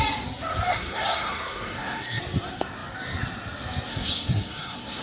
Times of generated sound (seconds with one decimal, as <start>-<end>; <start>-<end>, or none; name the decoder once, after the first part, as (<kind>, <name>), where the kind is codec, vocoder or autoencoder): 0.7-2.2 (codec, SNAC); 3.9-5.0